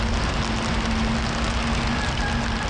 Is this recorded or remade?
recorded